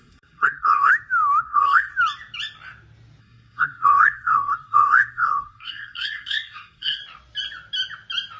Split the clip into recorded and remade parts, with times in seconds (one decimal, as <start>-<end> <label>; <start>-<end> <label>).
0.0-0.9 remade; 0.9-1.4 recorded; 1.4-1.9 remade; 1.9-3.2 recorded; 3.2-7.0 remade; 7.0-8.4 recorded